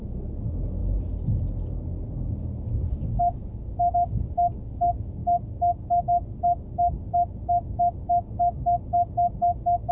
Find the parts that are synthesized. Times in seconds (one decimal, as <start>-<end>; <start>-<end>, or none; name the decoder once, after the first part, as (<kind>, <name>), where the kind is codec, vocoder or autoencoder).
5.2-5.9 (codec, DAC)